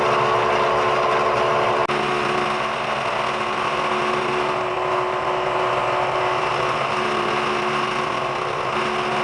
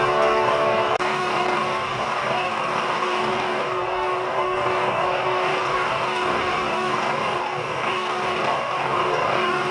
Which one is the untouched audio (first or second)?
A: first